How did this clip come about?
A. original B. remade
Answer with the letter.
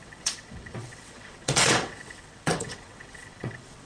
B